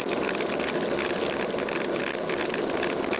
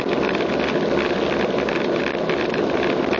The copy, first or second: first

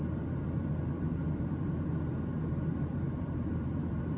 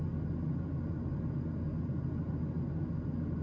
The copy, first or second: first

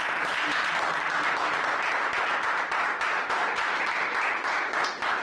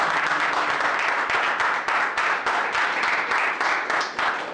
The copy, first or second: first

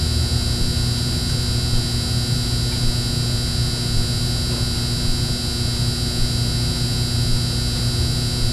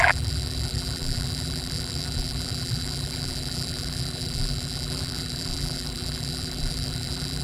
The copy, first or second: second